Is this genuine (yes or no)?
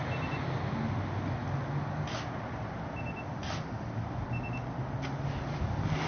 yes